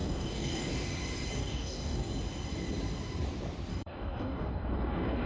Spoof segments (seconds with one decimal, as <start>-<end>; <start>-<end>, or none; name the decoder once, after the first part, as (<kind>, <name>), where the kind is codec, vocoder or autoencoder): 0.0-0.7 (codec, DAC); 1.4-2.1; 3.7-5.3